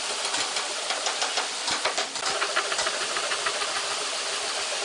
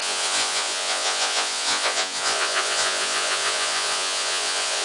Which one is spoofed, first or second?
second